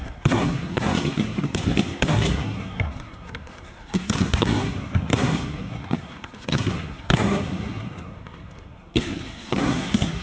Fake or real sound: fake